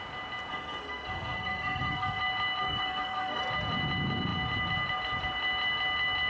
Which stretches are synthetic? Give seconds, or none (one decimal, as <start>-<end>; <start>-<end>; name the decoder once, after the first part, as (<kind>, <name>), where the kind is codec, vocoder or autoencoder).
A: 0.5-2.2 (codec, SNAC); 2.6-3.4